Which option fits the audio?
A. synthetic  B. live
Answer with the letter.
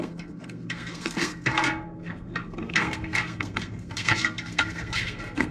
A